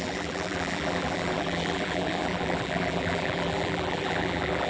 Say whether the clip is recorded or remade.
remade